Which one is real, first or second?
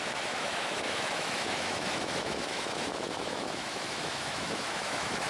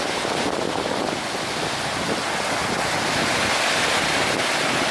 second